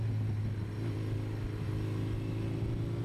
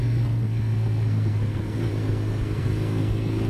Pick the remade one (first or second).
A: second